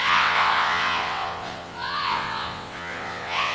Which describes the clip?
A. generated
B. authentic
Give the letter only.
A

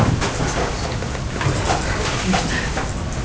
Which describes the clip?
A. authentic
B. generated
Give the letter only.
A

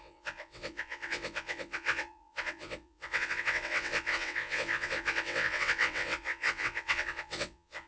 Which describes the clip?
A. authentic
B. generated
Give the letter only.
B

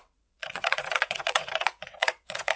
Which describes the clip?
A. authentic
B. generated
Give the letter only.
B